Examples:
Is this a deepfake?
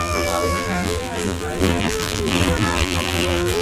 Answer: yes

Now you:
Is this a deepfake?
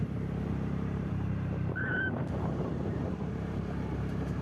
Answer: yes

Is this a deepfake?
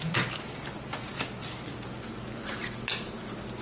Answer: no